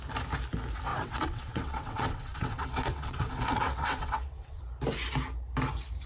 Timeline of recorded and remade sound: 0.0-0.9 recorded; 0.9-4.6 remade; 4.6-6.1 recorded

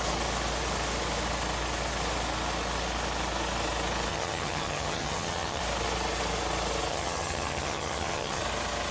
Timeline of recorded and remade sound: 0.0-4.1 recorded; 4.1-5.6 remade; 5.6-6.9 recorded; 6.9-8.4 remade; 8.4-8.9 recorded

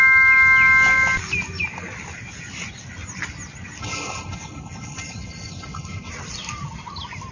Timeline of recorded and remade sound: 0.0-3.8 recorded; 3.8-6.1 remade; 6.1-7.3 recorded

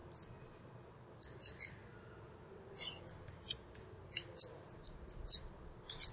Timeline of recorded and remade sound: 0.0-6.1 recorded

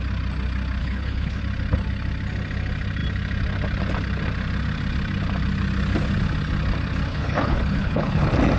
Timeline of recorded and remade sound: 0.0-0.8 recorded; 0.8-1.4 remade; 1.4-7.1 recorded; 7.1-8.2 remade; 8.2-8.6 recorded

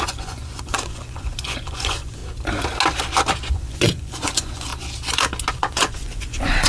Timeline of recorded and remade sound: 0.0-2.2 remade; 2.2-3.5 recorded; 3.5-4.7 remade; 4.7-5.5 recorded; 5.5-6.7 remade

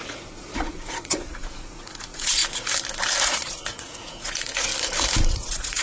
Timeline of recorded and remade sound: 0.0-2.4 remade; 2.4-3.2 recorded; 3.2-4.7 remade; 4.7-5.3 recorded; 5.3-5.8 remade